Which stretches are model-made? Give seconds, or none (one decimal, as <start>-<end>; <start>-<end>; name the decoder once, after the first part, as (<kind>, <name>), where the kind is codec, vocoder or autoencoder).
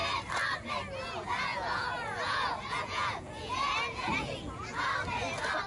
1.5-4.9 (vocoder, Vocos)